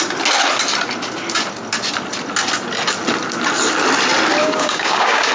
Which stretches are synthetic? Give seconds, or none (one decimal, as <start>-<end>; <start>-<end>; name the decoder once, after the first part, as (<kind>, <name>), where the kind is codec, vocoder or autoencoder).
4.4-5.3 (codec, DAC)